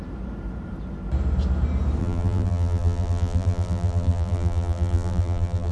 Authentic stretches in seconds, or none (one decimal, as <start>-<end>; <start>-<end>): 0.0-2.0